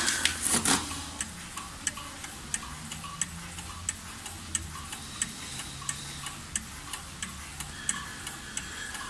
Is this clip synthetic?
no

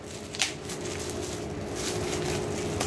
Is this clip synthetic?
no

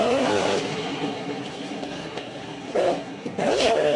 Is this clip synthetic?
yes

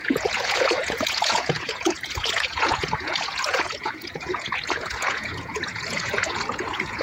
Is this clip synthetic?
yes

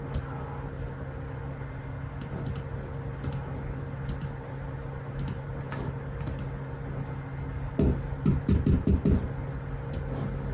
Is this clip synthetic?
no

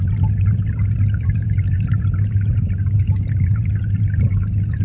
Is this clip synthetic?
yes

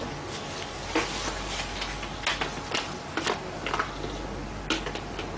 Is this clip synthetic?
no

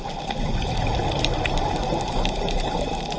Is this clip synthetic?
no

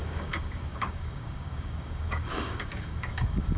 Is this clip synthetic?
yes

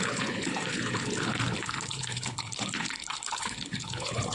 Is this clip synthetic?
yes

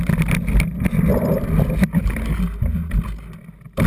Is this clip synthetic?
no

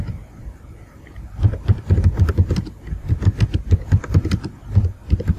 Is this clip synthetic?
no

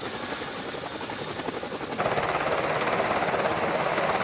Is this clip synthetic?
no